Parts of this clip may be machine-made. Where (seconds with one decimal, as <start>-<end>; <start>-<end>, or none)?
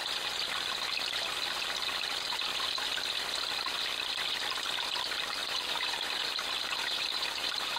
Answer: 5.4-7.8